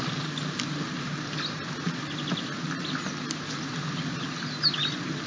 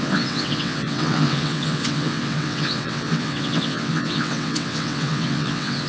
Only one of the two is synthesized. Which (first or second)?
second